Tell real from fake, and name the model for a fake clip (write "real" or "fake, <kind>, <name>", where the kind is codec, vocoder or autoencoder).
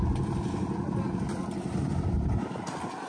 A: real